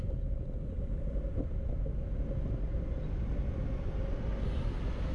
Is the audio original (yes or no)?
yes